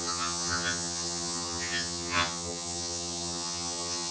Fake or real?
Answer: fake